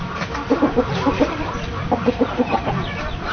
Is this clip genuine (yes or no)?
no